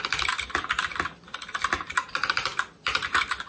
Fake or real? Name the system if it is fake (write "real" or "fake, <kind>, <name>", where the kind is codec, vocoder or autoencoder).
real